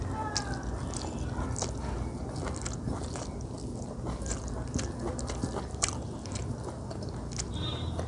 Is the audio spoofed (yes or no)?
no